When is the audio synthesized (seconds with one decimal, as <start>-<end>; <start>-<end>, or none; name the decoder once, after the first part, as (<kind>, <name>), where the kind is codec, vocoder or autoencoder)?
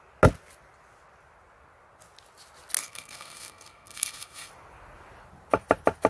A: 2.8-4.5 (codec, SNAC)